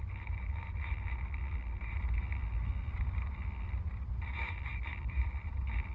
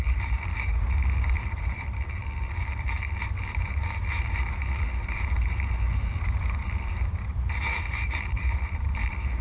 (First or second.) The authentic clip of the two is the first